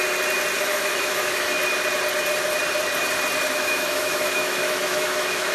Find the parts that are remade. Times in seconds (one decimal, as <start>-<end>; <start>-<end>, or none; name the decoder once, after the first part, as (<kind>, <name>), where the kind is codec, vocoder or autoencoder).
0.6-1.6 (autoencoder, DAC-VAE); 3.5-5.5